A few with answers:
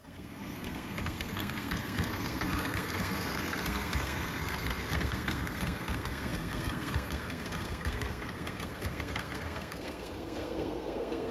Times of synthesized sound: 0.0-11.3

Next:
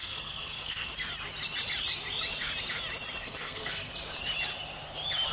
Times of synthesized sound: 0.0-0.9; 3.2-3.9

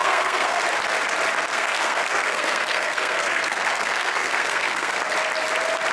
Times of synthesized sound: 0.0-0.6; 1.5-5.0